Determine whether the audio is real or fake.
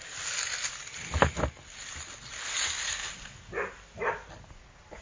real